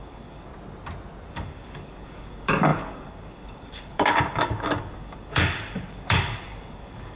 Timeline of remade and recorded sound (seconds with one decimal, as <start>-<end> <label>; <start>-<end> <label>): 0.0-0.5 remade; 0.5-1.3 recorded; 1.3-7.2 remade